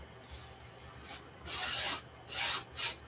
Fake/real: real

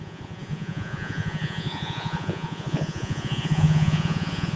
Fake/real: fake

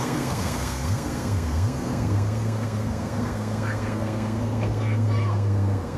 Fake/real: fake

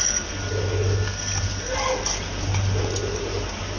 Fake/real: real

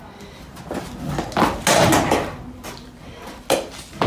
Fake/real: real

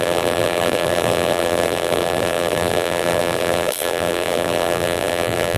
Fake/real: fake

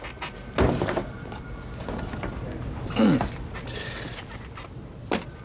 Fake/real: real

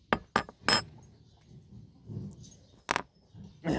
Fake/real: real